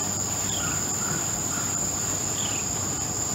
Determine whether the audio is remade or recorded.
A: remade